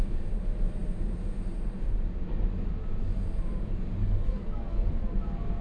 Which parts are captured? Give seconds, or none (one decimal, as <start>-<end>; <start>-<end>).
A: 0.0-4.0; 4.9-5.6

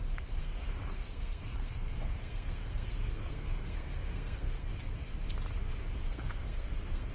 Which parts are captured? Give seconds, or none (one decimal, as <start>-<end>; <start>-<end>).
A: 0.0-0.4; 4.7-6.0